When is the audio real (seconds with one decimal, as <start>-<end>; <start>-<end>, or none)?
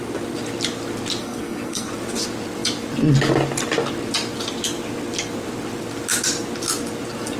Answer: 0.0-1.2; 1.9-7.4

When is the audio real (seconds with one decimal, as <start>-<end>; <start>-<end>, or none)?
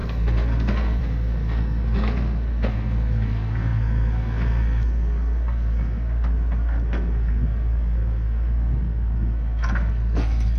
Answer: none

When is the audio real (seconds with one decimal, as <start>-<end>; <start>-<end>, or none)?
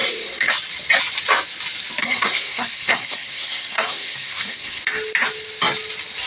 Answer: 0.5-2.0; 4.8-6.3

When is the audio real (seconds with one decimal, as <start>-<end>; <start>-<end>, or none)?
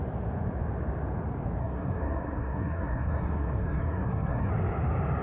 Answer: 0.0-1.6; 4.5-5.2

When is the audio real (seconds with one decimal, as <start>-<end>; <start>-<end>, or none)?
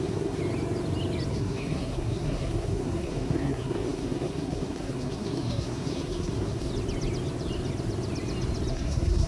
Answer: 0.4-1.3; 6.7-8.7